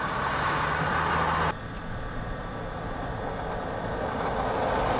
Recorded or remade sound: recorded